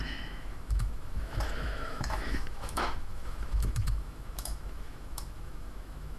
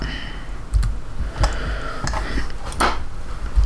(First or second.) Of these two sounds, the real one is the second